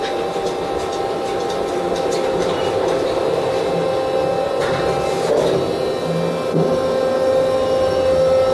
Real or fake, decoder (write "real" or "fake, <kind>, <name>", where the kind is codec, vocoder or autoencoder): real